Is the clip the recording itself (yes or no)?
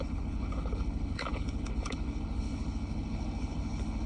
no